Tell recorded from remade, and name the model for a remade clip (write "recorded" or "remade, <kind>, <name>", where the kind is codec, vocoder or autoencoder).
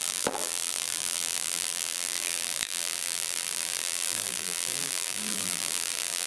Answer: remade, vocoder, BigVGAN v2